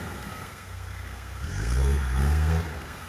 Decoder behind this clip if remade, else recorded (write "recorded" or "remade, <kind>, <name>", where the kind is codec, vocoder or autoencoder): remade, codec, SNAC